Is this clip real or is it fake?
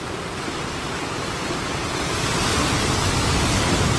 real